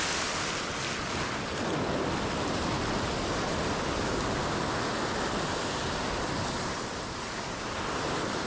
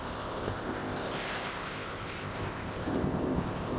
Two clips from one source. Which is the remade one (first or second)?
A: second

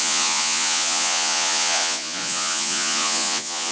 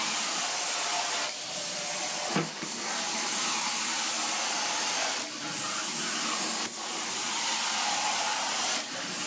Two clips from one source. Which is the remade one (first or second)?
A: first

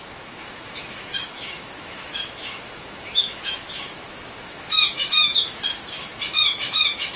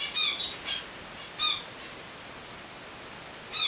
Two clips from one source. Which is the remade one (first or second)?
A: first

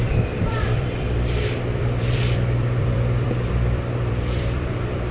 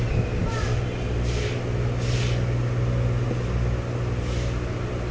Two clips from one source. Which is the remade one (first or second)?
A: first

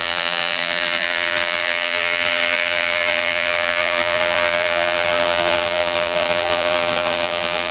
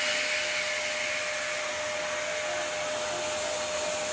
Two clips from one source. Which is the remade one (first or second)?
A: first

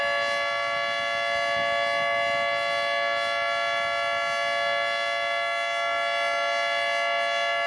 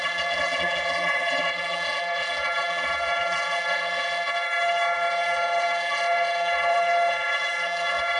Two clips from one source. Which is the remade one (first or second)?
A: second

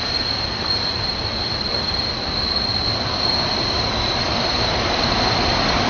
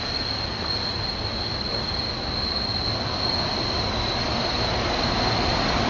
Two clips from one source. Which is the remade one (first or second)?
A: first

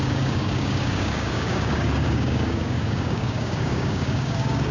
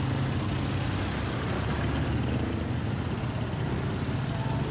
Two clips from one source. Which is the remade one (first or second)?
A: first